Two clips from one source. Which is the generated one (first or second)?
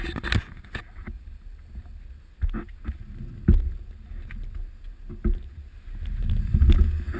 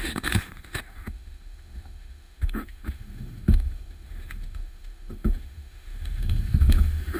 second